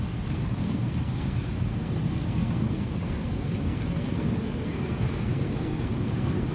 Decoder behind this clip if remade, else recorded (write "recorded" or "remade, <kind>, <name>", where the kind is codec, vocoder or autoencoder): remade, codec, SNAC